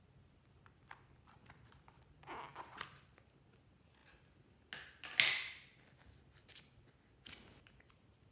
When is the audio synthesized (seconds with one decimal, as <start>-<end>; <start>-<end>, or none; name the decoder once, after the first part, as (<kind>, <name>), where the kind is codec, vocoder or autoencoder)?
0.0-4.0 (vocoder, BigVGAN v2); 7.9-8.3